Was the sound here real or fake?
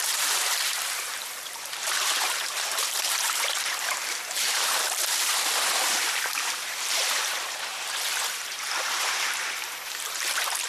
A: fake